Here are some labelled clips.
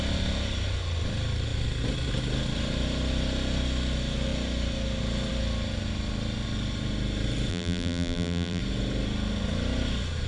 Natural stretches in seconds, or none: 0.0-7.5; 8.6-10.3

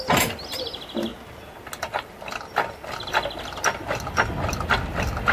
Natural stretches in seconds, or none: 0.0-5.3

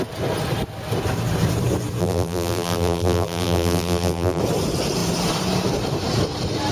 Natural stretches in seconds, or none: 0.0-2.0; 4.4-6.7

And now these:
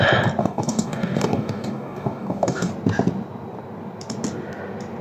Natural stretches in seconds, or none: 0.0-0.4; 2.7-5.0

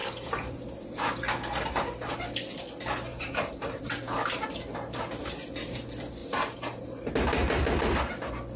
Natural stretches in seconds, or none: 0.6-3.1; 3.8-6.2; 7.1-8.6

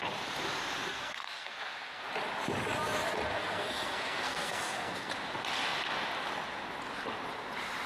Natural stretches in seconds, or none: 0.0-0.9; 2.1-3.4; 5.1-7.9

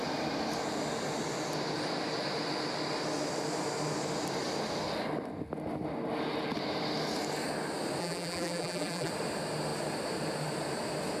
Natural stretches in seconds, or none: 0.0-8.0; 9.1-11.2

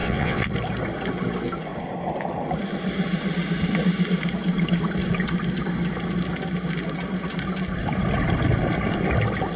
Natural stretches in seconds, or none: 0.5-9.6